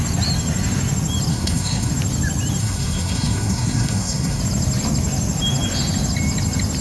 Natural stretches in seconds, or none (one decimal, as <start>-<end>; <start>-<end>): 0.0-1.3; 1.9-2.6; 4.4-6.8